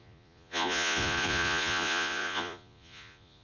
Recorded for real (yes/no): no